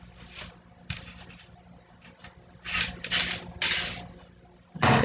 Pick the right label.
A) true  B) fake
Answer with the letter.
A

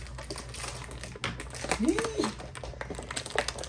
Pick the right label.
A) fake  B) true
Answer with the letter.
B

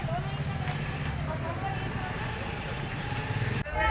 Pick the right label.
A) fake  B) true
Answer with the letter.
B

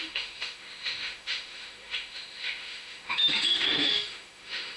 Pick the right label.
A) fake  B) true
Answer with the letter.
A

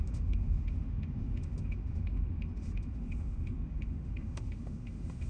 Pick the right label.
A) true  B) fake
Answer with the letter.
B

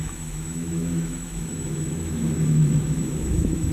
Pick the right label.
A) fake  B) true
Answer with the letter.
A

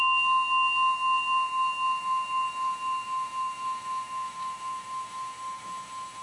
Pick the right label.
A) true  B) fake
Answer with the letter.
B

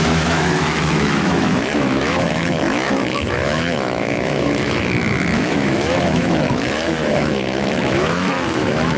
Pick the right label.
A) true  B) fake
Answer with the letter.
B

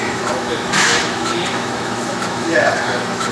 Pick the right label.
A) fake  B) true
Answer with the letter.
A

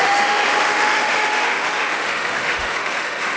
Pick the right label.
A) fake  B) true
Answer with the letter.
A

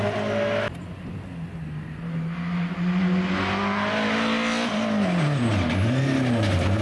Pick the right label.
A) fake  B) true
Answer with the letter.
B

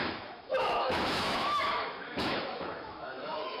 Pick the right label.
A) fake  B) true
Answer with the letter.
A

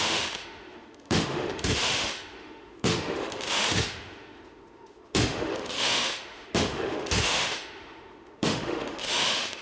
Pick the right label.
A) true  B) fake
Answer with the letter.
B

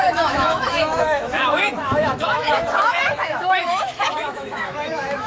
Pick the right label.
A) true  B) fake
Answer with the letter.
B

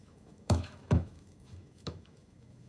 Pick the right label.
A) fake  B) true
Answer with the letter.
A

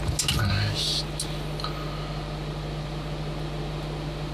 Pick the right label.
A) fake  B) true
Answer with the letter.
B